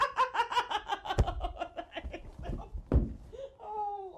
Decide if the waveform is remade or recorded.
recorded